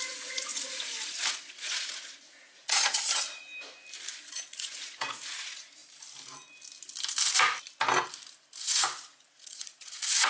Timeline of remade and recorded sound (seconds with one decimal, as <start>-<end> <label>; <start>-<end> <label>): 0.0-3.5 remade; 3.5-4.2 recorded; 4.2-5.8 remade; 5.8-8.6 recorded; 8.6-10.3 remade